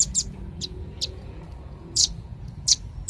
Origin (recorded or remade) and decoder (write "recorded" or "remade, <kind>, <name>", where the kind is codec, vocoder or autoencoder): remade, vocoder, Vocos